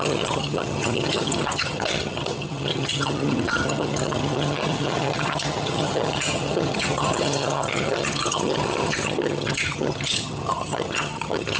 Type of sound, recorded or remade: remade